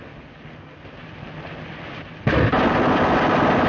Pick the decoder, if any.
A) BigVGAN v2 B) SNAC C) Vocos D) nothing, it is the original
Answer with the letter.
D